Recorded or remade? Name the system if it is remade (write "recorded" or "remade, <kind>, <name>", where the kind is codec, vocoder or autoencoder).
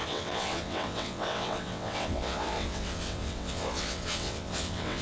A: remade, vocoder, WaveNeXt